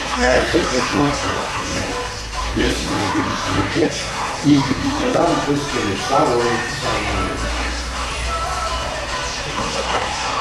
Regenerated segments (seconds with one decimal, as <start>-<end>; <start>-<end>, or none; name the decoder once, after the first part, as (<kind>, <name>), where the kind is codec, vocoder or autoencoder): 0.0-1.9 (codec, SNAC); 2.4-5.2; 7.5-8.1; 9.5-10.4